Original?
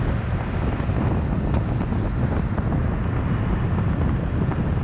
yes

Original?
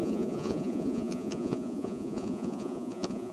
no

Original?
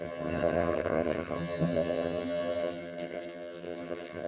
no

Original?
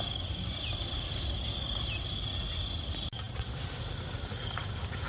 yes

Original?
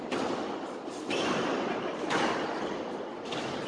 yes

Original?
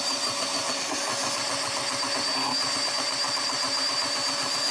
yes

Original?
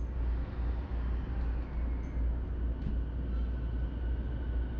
yes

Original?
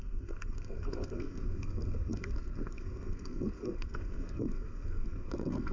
no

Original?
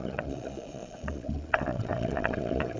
no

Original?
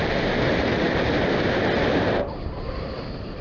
yes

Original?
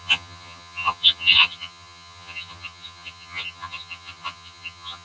no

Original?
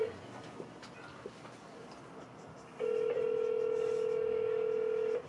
yes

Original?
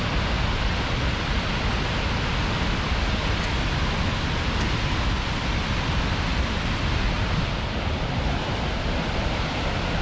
yes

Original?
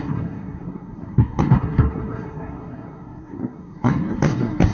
no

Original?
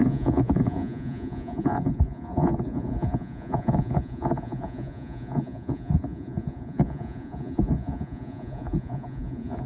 no